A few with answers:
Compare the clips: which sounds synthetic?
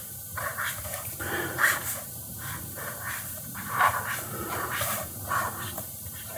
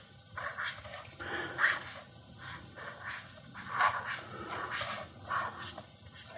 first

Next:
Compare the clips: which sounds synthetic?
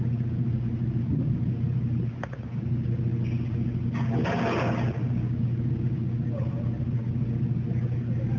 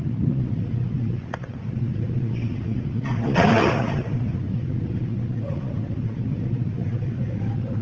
second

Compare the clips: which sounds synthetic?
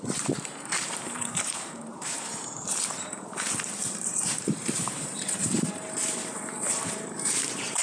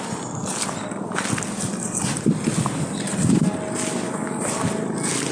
first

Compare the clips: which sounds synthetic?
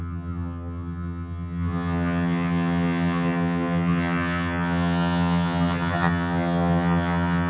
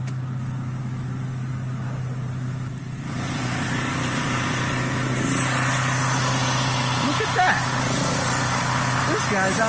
first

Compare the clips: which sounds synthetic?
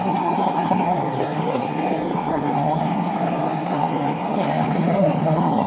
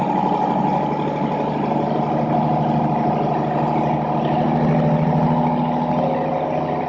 first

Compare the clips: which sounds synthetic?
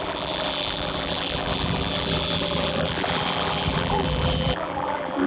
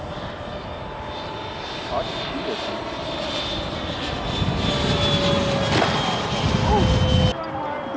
first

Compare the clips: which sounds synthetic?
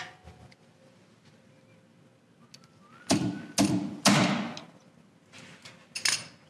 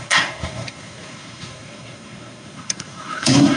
second